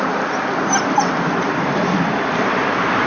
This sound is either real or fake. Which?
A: real